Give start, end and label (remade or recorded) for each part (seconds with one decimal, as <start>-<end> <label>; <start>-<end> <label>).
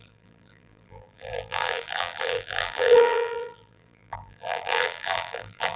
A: 0.0-5.8 remade